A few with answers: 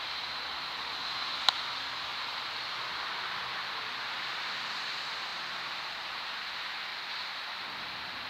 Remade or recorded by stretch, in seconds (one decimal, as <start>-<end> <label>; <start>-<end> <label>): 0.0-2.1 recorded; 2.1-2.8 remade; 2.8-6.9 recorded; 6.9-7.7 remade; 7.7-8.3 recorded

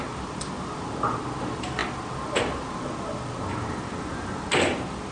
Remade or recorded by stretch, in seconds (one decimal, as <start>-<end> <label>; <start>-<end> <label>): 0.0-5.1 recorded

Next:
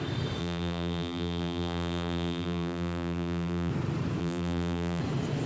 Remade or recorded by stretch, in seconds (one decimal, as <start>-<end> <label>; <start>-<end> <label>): 0.0-0.4 recorded; 0.4-3.7 remade; 3.7-4.2 recorded; 4.2-5.0 remade; 5.0-5.5 recorded